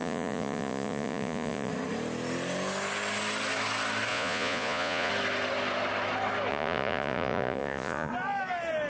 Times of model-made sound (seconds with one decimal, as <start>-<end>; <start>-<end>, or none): 0.0-1.7; 4.1-5.1; 6.5-8.1

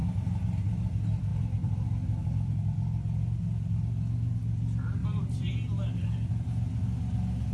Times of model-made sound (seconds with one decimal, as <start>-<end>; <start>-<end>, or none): 1.3-3.4; 5.0-5.5

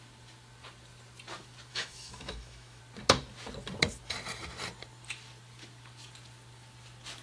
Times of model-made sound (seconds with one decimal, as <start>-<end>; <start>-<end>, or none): 1.7-2.8

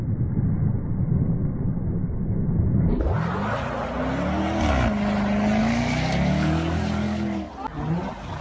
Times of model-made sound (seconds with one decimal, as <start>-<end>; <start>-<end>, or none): 5.6-7.5

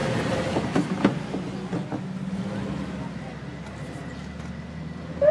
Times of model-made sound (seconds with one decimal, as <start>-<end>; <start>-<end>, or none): 0.0-0.6

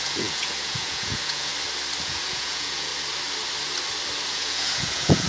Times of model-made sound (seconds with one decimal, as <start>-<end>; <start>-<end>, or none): 0.0-1.5; 2.0-2.9; 4.3-5.3